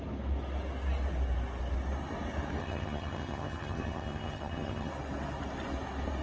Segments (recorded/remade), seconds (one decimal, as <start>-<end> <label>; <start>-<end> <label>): 0.0-2.6 recorded; 2.6-4.9 remade; 4.9-6.2 recorded